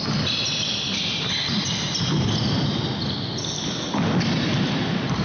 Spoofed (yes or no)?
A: no